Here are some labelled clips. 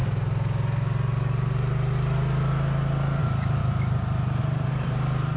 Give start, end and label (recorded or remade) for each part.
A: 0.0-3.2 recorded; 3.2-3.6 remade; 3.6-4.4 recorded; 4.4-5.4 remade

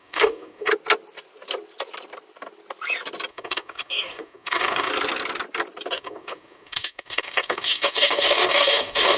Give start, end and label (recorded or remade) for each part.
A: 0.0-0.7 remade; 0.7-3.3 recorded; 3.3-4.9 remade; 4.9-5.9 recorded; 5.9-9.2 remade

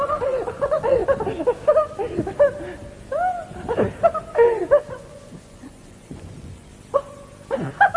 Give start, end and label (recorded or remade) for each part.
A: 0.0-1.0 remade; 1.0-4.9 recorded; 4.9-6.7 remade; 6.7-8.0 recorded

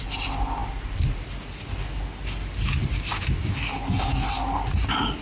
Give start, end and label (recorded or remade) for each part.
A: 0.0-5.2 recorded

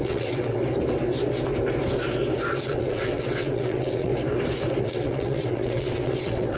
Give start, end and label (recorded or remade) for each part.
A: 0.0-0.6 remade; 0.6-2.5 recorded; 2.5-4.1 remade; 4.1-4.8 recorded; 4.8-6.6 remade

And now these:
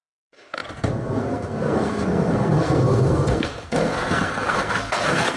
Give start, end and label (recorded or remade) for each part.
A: 0.0-5.4 remade